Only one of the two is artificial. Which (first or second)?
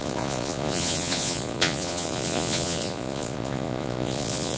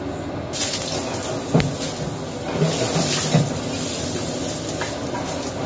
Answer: first